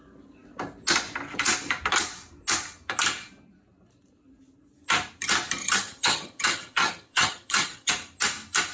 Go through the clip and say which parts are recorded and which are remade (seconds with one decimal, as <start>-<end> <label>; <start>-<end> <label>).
0.0-5.6 recorded; 5.6-7.9 remade; 7.9-8.7 recorded